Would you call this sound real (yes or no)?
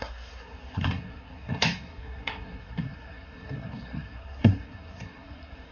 no